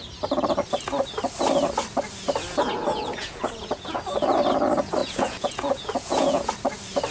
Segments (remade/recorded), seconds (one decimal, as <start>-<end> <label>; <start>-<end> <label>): 0.0-2.9 recorded; 2.9-4.0 remade; 4.0-5.0 recorded; 5.0-6.5 remade; 6.5-7.1 recorded